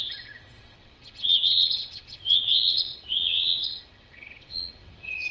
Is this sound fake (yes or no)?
yes